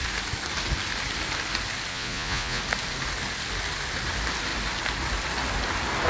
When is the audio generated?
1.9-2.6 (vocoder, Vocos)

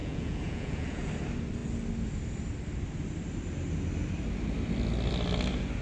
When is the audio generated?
0.0-1.1 (vocoder, Vocos)

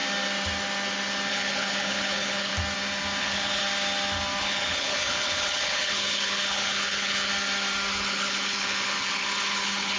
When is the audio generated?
1.3-2.5 (codec, HILCodec); 3.2-3.6; 4.4-7.3; 7.9-10.0

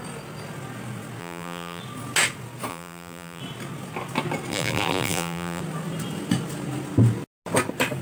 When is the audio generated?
1.2-1.8 (vocoder, BigVGAN v2); 2.7-3.4; 4.5-5.6

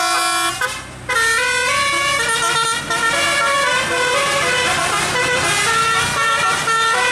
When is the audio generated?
none